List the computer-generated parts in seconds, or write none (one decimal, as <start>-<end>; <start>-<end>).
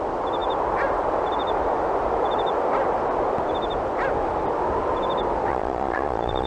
5.5-6.5